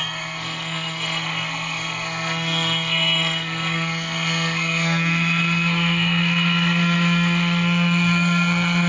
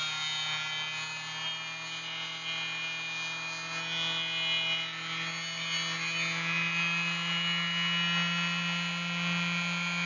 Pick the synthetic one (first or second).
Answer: first